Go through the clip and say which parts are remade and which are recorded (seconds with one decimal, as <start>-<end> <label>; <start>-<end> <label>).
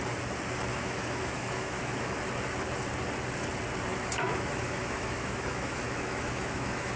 0.0-0.7 recorded; 0.7-2.2 remade; 2.2-3.9 recorded; 3.9-7.0 remade